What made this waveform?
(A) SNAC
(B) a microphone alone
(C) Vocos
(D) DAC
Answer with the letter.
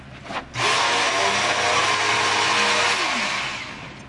B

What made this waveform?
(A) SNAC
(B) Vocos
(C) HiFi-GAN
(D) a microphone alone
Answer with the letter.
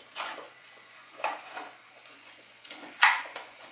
B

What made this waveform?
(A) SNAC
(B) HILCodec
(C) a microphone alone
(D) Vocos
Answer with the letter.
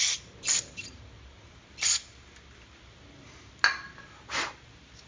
C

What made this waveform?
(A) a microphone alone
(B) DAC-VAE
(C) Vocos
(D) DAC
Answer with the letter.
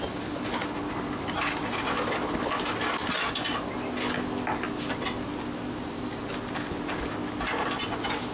A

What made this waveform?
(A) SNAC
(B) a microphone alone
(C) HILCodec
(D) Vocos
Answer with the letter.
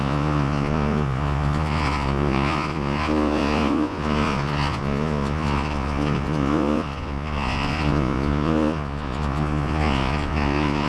D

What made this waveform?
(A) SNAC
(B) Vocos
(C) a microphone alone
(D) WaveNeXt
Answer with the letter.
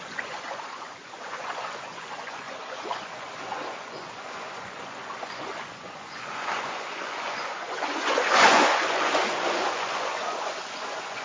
B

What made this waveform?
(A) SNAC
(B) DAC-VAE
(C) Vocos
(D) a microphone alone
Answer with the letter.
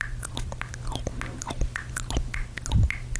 D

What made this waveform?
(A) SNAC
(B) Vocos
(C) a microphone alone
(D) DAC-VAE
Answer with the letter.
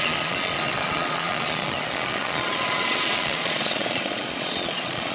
B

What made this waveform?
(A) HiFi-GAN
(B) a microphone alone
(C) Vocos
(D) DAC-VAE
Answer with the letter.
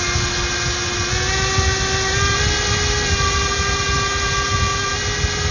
B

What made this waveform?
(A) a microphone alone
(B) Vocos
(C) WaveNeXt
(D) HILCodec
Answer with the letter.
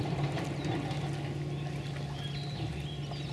A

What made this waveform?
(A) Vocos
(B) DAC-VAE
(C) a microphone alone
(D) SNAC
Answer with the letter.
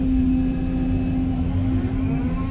C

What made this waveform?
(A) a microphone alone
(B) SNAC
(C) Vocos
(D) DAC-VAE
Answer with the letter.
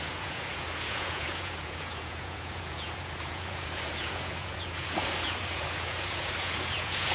C